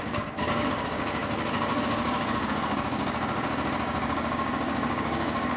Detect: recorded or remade remade